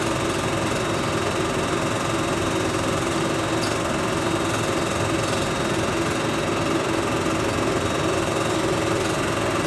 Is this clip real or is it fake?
real